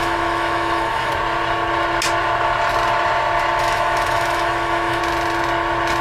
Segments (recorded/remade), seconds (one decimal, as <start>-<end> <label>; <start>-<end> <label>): 0.0-1.1 remade; 1.1-3.6 recorded; 3.6-5.0 remade; 5.0-6.0 recorded